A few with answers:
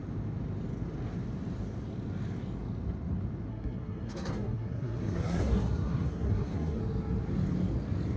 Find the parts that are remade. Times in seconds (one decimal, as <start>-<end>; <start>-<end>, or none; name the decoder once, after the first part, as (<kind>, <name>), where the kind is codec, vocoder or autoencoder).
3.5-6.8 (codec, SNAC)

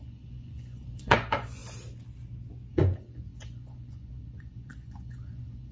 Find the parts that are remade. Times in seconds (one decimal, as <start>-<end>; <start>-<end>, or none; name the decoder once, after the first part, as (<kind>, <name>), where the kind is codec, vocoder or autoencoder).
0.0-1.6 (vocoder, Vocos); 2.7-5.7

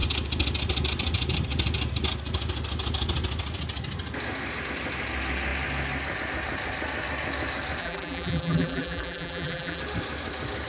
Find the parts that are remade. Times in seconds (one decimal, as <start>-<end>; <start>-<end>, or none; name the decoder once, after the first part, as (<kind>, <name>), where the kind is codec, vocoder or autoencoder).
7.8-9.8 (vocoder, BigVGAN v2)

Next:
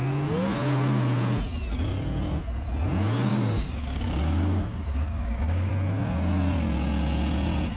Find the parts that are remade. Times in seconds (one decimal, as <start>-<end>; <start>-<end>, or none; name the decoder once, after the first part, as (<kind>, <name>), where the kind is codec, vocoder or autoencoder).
3.3-5.7 (codec, DAC)

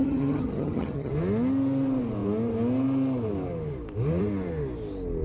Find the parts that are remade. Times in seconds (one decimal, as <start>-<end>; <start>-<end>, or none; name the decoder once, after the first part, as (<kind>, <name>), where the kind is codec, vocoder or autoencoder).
0.0-1.1 (vocoder, HiFi-GAN)

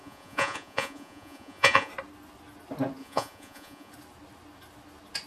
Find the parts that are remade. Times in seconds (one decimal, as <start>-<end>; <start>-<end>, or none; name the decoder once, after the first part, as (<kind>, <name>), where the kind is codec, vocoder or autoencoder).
0.0-1.9 (vocoder, Vocos); 3.0-3.9